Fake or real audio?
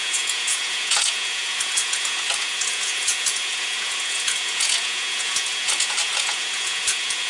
fake